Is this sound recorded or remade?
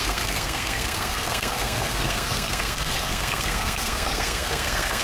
remade